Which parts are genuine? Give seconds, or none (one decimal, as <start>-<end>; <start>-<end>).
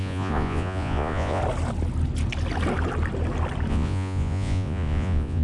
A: 1.4-3.7